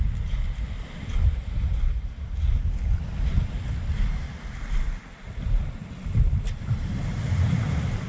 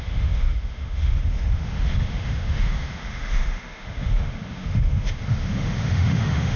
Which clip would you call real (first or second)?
first